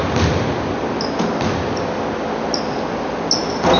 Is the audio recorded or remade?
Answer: recorded